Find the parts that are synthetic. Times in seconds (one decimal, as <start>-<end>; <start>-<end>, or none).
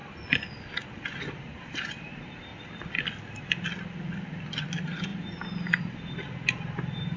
0.7-2.5; 4.6-5.1; 5.8-7.2